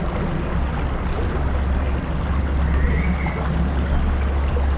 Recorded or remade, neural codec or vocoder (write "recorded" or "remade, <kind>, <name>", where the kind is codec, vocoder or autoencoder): recorded